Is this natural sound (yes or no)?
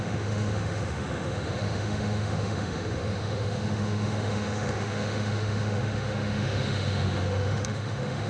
no